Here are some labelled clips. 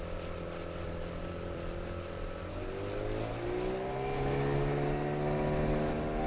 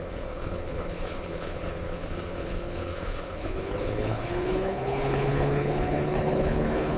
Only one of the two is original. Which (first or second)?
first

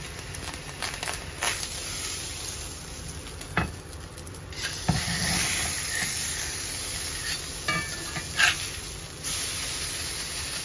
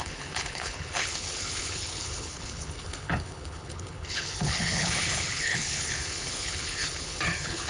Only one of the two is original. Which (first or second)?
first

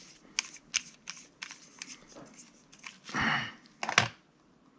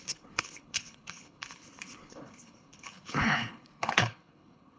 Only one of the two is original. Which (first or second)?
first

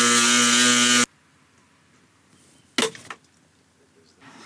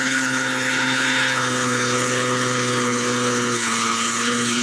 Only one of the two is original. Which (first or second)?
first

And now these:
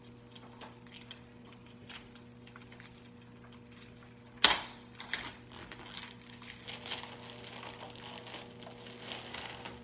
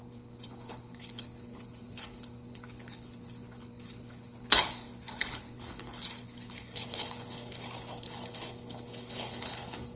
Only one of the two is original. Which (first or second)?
first